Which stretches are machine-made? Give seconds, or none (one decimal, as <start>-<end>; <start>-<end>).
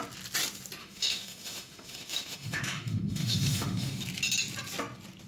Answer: 0.8-4.0